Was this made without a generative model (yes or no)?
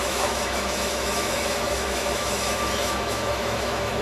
no